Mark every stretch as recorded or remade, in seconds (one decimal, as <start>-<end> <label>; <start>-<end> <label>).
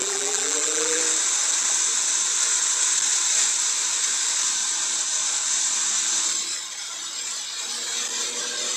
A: 0.0-1.0 remade; 1.0-8.8 recorded